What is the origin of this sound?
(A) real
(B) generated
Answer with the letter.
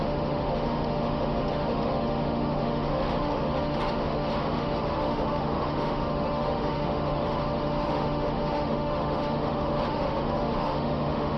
B